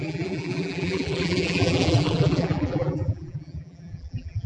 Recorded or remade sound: remade